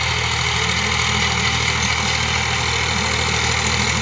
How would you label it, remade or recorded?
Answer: recorded